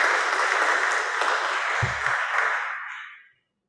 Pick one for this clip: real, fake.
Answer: real